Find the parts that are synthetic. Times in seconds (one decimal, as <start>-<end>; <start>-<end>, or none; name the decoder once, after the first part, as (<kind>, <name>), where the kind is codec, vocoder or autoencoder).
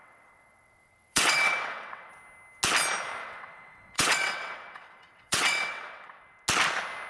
0.0-2.1 (vocoder, WaveNeXt); 3.2-6.2